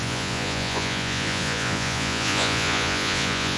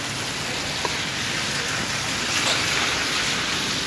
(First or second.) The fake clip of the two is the first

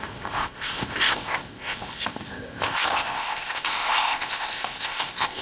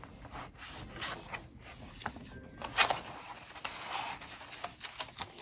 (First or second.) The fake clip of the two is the first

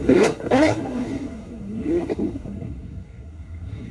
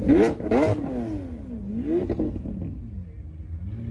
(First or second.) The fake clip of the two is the first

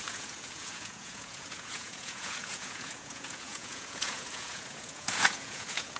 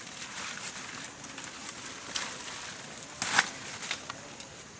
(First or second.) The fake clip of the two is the first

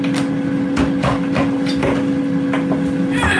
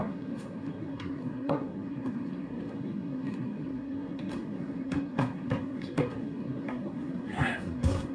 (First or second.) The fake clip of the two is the second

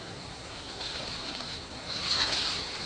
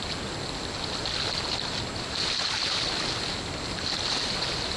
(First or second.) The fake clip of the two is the first